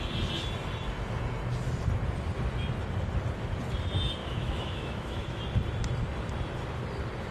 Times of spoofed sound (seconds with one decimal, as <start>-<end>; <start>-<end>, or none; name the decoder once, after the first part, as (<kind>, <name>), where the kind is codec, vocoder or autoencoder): 4.2-5.4 (autoencoder, DAC-VAE)